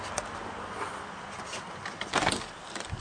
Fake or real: real